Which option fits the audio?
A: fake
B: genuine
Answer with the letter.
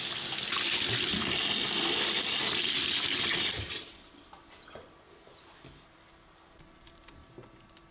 A